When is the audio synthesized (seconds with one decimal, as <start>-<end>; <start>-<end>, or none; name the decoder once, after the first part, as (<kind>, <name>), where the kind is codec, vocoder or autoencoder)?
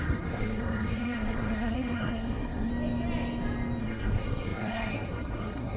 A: 0.0-2.7 (codec, SNAC); 3.8-5.8